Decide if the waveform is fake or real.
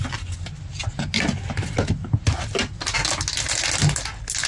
real